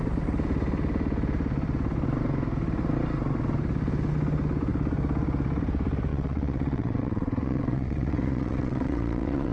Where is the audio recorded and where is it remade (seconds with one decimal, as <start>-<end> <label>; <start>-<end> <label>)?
0.0-6.1 recorded; 6.1-9.5 remade